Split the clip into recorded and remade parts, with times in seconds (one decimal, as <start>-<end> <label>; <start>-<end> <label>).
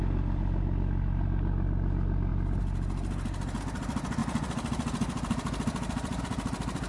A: 0.0-6.9 recorded